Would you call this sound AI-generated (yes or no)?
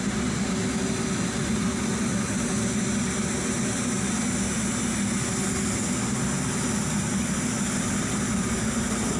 no